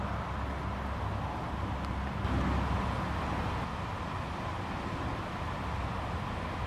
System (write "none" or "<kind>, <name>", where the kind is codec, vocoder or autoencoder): none